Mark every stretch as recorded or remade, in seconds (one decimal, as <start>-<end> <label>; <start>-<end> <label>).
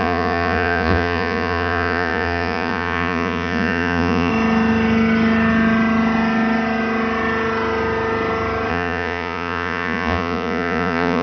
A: 0.0-4.3 remade; 4.3-8.7 recorded; 8.7-11.2 remade